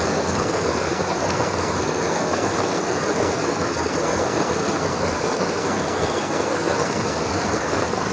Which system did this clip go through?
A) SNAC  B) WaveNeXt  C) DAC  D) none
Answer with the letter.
A